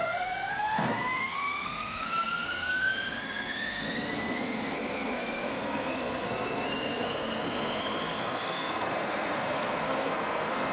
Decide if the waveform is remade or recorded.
remade